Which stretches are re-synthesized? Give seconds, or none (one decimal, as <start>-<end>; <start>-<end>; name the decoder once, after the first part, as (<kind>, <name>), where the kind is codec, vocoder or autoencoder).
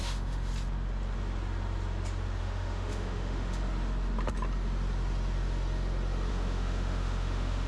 0.0-0.5 (autoencoder, DAC-VAE); 2.4-3.6; 6.3-7.7